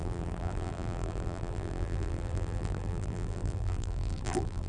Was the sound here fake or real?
fake